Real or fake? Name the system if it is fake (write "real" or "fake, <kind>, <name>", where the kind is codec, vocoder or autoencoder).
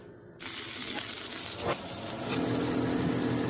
real